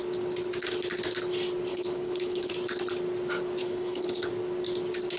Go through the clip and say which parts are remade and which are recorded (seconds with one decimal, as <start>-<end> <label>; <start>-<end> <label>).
0.0-1.7 recorded; 1.7-2.5 remade; 2.5-3.6 recorded; 3.6-4.3 remade; 4.3-5.2 recorded